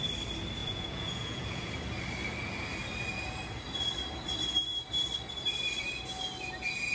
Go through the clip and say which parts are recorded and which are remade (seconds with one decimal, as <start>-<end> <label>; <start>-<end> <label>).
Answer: 0.0-0.6 recorded; 0.6-1.7 remade; 1.7-6.9 recorded

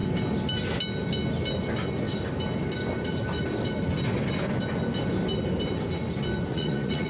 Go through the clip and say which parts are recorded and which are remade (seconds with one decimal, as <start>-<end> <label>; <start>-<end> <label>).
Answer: 0.0-6.5 recorded; 6.5-7.1 remade

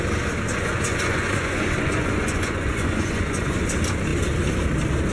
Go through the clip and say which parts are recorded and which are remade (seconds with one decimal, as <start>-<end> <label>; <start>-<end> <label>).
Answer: 0.0-0.5 recorded; 0.5-3.6 remade; 3.6-5.1 recorded

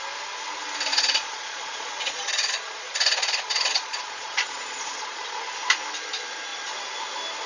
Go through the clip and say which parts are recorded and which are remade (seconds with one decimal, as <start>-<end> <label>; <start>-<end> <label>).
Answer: 0.0-0.9 recorded; 0.9-5.4 remade; 5.4-7.5 recorded

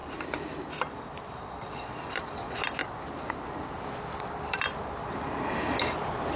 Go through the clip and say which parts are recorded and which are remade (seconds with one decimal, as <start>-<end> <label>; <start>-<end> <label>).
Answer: 0.0-1.3 recorded; 1.3-2.6 remade; 2.6-6.4 recorded